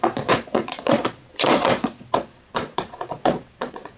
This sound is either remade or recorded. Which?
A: remade